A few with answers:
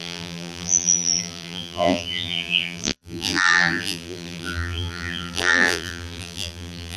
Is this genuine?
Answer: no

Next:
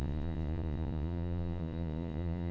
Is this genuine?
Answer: no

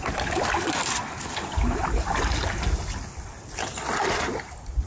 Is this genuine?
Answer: yes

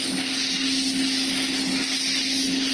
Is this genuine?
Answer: yes